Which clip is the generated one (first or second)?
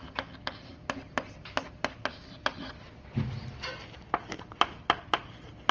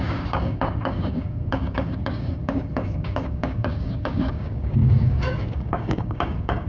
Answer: second